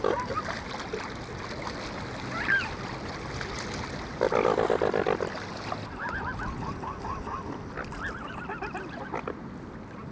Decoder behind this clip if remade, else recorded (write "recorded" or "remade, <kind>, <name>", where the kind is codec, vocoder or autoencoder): recorded